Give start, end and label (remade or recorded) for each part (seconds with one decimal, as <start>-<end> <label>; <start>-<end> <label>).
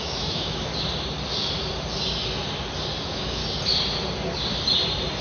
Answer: 0.0-0.7 remade; 0.7-3.0 recorded; 3.0-3.4 remade; 3.4-5.2 recorded